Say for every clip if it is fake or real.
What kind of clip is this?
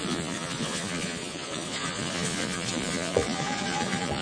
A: fake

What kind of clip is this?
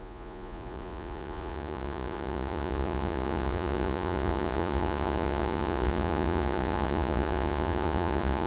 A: fake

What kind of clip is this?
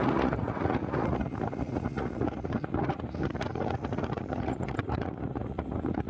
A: fake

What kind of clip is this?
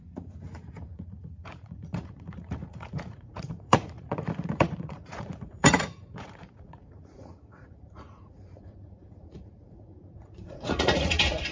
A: fake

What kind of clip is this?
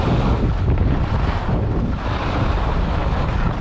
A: real